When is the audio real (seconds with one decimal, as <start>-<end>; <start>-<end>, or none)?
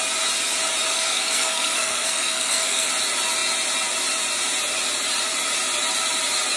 0.0-0.9; 2.9-6.6